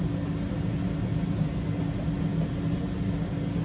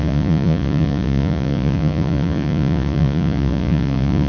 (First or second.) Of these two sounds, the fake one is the second